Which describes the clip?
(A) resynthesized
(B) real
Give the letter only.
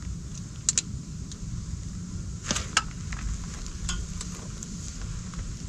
B